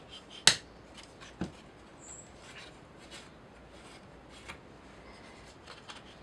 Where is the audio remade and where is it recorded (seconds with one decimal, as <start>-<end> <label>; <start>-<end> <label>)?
0.0-6.2 recorded